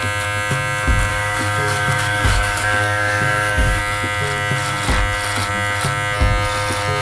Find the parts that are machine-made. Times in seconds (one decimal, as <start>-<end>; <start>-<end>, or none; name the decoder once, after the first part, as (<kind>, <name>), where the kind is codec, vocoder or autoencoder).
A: 1.1-3.8 (codec, DAC)